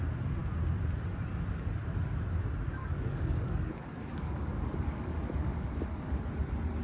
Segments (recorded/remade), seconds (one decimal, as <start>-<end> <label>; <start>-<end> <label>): 0.0-2.8 recorded; 2.8-6.3 remade; 6.3-6.8 recorded